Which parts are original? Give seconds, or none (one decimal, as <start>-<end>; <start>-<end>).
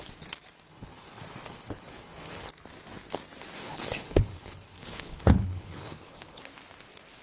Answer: 0.0-0.7; 2.5-3.6; 6.4-7.2